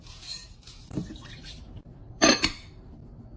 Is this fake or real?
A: fake